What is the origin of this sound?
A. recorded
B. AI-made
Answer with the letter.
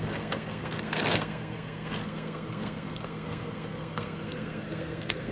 B